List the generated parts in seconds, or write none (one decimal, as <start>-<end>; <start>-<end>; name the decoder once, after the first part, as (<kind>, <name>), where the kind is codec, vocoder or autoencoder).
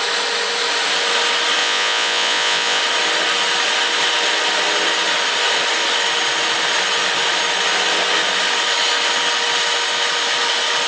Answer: 1.6-2.8 (vocoder, Vocos)